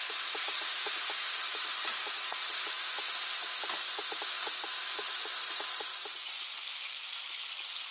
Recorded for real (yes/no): yes